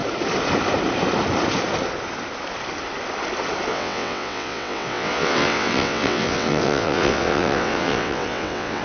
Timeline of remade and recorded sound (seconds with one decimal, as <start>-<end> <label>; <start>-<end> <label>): 0.0-3.7 recorded; 3.7-8.8 remade